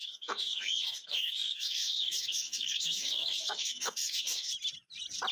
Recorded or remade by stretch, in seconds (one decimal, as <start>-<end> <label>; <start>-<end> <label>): 0.0-4.5 remade; 4.5-5.3 recorded